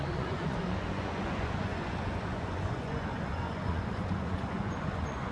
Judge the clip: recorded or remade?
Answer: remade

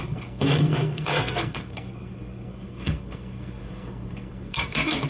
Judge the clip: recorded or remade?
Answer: remade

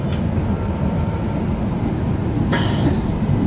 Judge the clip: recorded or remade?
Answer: recorded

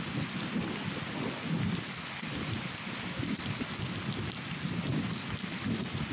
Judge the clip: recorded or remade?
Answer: recorded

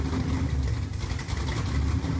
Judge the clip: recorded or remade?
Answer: recorded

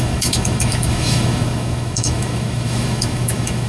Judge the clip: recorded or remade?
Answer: remade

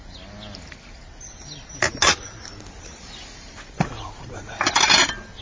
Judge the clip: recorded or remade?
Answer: recorded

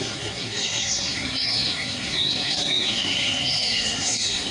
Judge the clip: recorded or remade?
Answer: remade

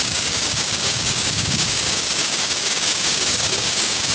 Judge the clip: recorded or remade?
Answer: remade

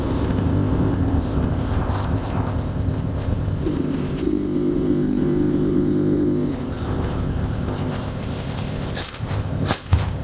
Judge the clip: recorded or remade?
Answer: remade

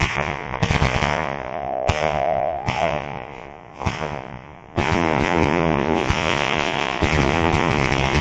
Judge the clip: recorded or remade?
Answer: remade